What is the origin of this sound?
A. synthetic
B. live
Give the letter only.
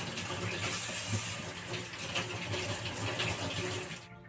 B